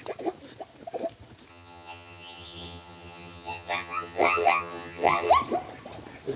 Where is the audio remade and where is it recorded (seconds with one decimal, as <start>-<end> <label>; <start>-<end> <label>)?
0.0-1.5 recorded; 1.5-5.3 remade; 5.3-6.4 recorded